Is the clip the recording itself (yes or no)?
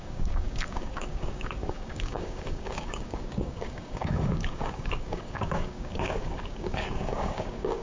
no